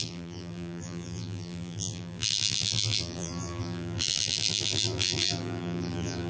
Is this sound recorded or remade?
remade